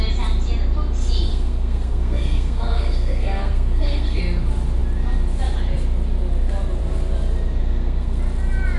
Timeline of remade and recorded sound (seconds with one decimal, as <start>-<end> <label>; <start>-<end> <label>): 0.0-1.3 recorded; 1.3-4.2 remade; 4.2-7.6 recorded; 7.6-8.2 remade; 8.2-8.8 recorded